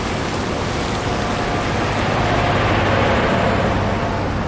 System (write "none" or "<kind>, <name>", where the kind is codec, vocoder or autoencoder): none